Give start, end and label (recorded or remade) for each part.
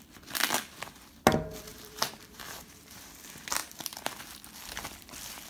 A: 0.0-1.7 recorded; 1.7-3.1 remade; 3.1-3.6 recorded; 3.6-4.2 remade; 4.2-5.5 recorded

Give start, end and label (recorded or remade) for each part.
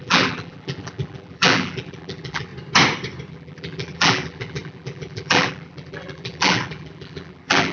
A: 0.0-2.5 remade; 2.5-3.3 recorded; 3.3-7.7 remade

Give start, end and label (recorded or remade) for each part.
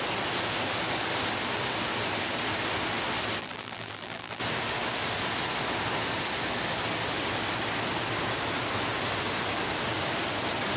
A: 0.0-3.4 recorded; 3.4-4.4 remade; 4.4-10.8 recorded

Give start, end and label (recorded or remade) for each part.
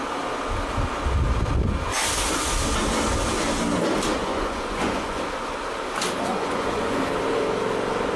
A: 0.0-4.2 recorded; 4.2-5.2 remade; 5.2-6.3 recorded; 6.3-7.0 remade; 7.0-8.2 recorded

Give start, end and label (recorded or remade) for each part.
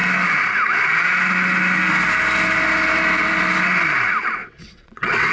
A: 0.0-4.4 recorded; 4.4-5.3 remade